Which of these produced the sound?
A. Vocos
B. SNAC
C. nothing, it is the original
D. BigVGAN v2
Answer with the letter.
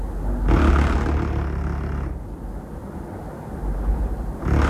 C